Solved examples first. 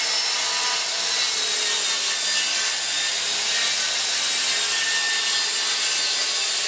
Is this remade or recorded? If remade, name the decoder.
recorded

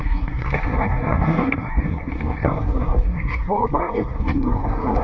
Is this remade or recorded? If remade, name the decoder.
remade, codec, SNAC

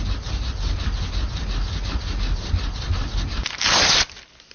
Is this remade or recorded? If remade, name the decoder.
recorded